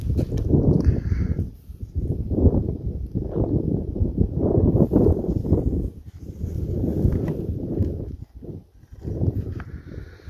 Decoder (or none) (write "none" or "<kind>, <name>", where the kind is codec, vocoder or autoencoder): none